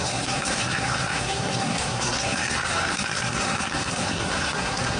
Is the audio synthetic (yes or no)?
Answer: yes